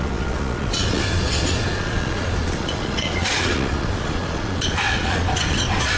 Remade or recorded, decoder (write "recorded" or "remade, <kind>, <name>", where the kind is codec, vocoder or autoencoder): remade, vocoder, Vocos